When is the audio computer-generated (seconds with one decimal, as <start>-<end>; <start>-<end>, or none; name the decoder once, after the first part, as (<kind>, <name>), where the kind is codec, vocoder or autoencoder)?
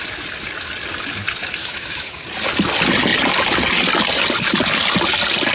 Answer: 1.6-2.2 (autoencoder, DAC-VAE)